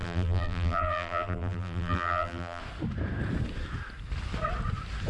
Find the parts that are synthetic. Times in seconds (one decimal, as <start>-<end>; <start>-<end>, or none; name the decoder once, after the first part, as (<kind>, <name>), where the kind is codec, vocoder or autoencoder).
0.0-2.6 (vocoder, BigVGAN v2)